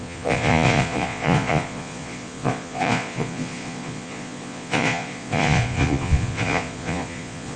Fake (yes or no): yes